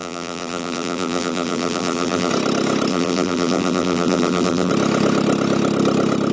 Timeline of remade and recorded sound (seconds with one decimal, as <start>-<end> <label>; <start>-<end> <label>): 0.0-2.3 remade; 2.3-2.9 recorded; 2.9-4.7 remade; 4.7-6.3 recorded